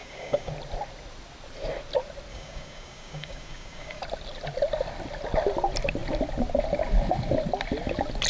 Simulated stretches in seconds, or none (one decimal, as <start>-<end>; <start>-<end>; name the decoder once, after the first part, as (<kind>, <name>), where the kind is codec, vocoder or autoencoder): 0.0-0.5 (codec, DAC); 2.3-4.0